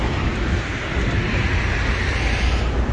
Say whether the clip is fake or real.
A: real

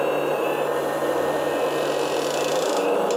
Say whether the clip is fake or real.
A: real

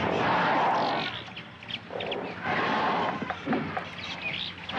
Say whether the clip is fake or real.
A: real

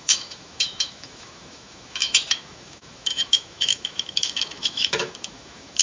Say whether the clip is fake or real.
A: fake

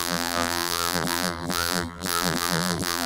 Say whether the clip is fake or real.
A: fake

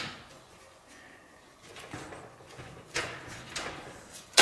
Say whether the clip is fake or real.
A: fake